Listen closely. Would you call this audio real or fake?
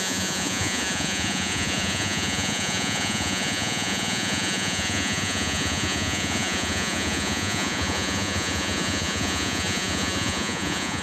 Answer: fake